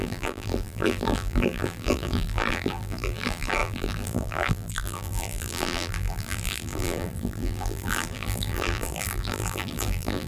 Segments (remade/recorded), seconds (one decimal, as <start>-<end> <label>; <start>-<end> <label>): 0.0-10.3 remade